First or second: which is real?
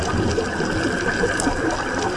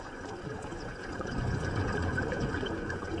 first